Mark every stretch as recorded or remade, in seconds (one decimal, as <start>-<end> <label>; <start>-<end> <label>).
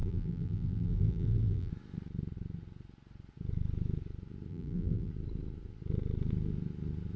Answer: 0.0-1.7 remade; 1.7-4.5 recorded; 4.5-5.1 remade; 5.1-7.2 recorded